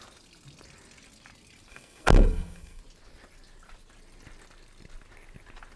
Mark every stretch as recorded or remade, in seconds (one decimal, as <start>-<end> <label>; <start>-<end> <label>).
0.0-1.7 recorded; 1.7-2.8 remade; 2.8-5.8 recorded